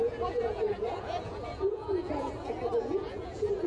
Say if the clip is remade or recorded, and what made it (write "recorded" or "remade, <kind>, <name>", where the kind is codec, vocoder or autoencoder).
remade, vocoder, Vocos